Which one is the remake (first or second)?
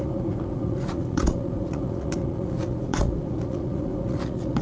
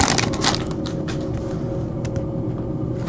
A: first